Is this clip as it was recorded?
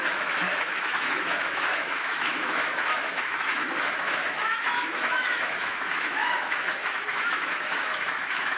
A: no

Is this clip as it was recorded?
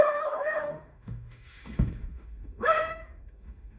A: no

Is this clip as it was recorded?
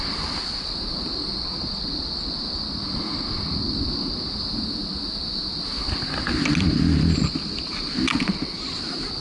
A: yes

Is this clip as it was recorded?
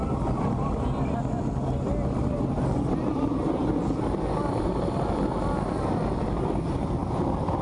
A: yes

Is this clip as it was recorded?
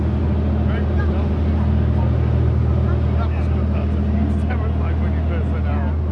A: yes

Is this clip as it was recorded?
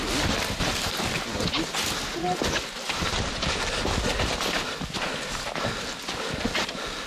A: yes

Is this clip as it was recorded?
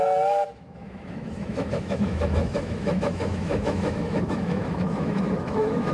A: no